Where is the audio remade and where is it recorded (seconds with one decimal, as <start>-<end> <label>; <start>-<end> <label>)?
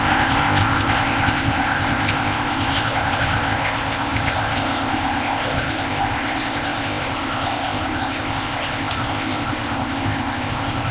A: 0.0-10.9 remade